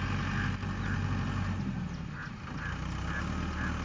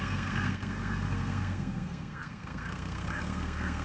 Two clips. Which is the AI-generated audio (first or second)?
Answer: second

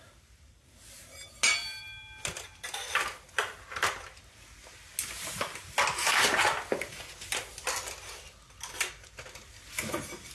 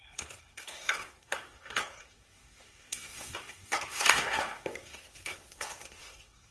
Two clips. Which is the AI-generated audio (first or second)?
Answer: second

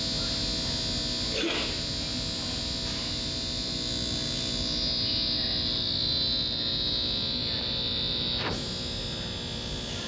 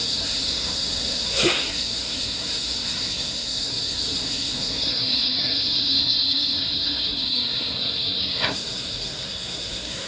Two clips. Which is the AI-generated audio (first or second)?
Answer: second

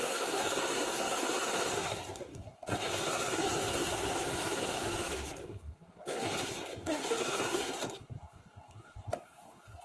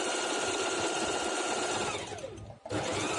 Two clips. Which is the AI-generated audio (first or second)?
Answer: first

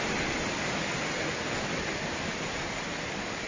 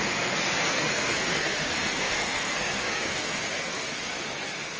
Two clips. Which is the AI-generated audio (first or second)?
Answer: second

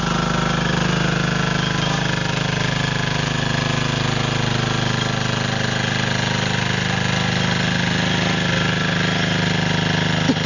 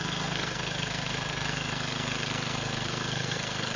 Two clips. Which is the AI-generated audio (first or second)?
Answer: second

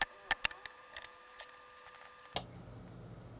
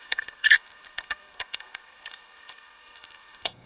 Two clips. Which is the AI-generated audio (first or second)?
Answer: second